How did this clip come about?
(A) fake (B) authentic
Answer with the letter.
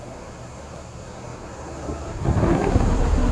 A